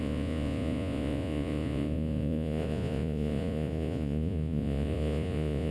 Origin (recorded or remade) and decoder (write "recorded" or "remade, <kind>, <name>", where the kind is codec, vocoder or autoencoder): remade, vocoder, Vocos